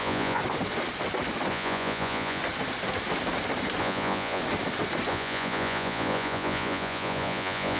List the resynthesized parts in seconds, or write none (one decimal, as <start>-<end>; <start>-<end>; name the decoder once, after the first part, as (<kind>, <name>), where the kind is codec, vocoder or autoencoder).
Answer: 0.0-0.4 (vocoder, Vocos); 1.5-2.4; 3.8-4.4; 5.1-7.8